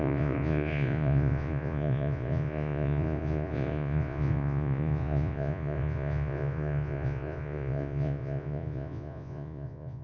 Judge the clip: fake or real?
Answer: fake